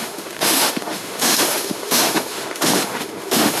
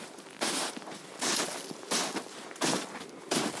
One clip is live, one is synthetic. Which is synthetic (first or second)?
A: first